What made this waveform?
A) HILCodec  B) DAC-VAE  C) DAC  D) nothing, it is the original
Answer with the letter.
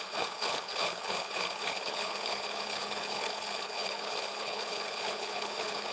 A